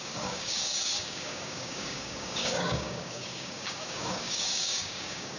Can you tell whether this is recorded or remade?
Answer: remade